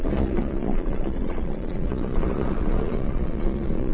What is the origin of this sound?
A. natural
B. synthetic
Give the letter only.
B